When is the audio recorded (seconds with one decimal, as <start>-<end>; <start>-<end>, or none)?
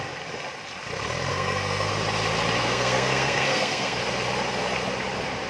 0.0-1.3; 1.9-2.6; 4.0-5.5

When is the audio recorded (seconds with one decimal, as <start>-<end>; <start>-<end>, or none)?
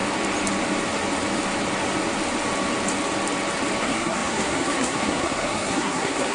0.0-3.8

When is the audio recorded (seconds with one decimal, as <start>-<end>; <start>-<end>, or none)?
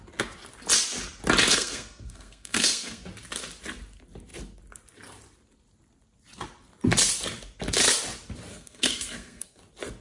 0.0-1.5; 3.0-8.5; 9.6-10.0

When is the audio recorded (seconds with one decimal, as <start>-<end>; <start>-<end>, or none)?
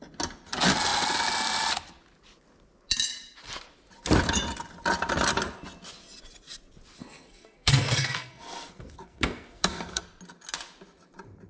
0.0-7.0; 10.0-11.5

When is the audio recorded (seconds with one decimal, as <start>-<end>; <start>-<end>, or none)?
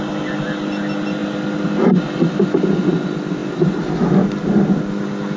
0.0-5.4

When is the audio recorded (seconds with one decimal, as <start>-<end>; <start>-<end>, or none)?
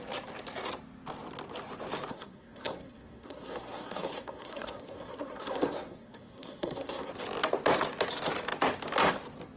0.0-2.1; 7.1-9.6